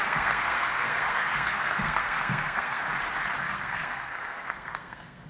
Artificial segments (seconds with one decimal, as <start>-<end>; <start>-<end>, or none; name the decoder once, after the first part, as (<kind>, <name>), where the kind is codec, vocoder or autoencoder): 0.0-2.8 (codec, SNAC); 3.4-5.3